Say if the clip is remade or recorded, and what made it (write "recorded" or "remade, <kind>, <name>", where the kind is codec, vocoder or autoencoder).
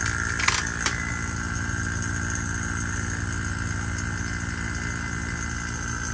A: recorded